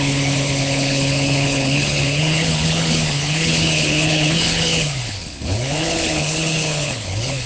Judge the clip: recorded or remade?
remade